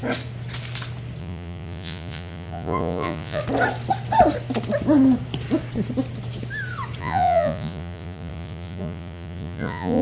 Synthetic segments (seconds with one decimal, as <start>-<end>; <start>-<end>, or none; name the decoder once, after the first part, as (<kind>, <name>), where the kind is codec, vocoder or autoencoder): 1.2-3.4 (vocoder, Vocos); 7.0-10.0